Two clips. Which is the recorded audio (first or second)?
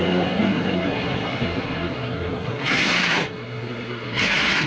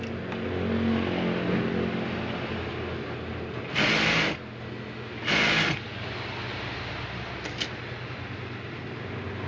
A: second